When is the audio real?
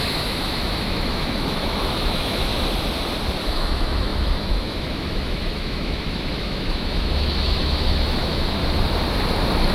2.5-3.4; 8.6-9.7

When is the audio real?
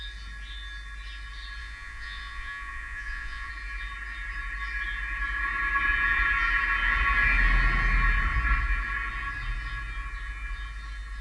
0.0-1.6; 3.5-11.2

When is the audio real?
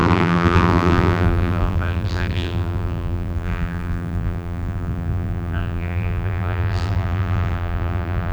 none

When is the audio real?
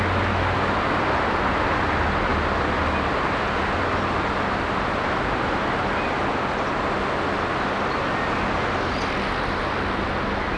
0.0-10.6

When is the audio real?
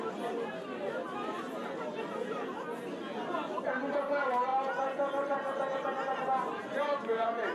0.0-4.5; 5.1-7.5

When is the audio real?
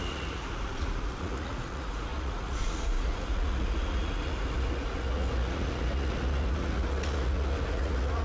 none